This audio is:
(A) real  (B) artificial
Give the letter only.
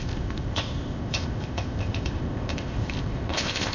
B